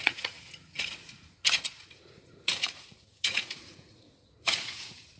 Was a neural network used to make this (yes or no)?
yes